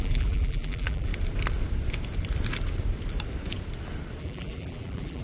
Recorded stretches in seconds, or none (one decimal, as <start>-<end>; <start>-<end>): 1.1-4.2

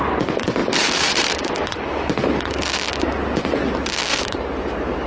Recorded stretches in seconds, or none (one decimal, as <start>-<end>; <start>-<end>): 0.0-0.6; 1.5-4.1

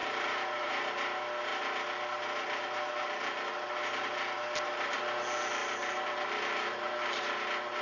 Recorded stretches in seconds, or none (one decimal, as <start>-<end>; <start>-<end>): 0.7-5.6; 7.2-7.8